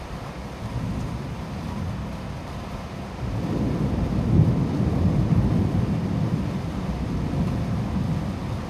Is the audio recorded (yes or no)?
yes